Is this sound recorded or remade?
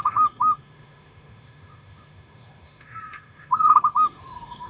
remade